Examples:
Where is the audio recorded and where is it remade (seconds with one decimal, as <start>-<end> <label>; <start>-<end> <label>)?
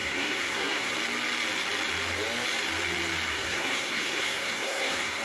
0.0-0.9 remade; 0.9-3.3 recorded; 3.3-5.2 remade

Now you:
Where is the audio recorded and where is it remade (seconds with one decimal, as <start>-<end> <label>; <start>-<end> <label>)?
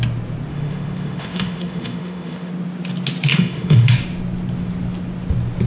0.0-0.5 recorded; 0.5-2.5 remade; 2.5-3.3 recorded; 3.3-3.9 remade; 3.9-5.7 recorded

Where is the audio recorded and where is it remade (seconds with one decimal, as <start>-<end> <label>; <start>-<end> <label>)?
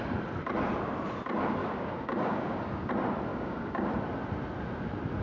0.0-1.6 recorded; 1.6-2.9 remade; 2.9-3.3 recorded; 3.3-3.9 remade; 3.9-5.2 recorded